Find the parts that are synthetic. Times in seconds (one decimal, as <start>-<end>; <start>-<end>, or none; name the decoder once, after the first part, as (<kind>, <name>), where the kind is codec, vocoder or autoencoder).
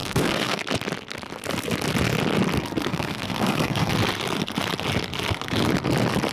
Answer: 0.0-0.6 (codec, SNAC); 2.9-3.9